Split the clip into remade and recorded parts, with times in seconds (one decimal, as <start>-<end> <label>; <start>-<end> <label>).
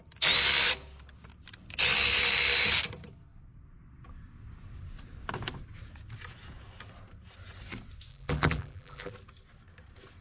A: 0.0-8.1 recorded; 8.1-9.1 remade; 9.1-10.2 recorded